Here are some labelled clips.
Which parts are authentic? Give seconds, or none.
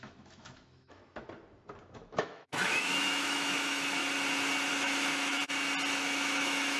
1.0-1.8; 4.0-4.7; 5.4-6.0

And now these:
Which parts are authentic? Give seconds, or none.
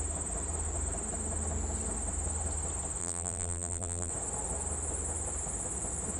0.0-3.0; 4.1-6.2